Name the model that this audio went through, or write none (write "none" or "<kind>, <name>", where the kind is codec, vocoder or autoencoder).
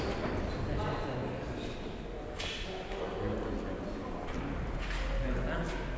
none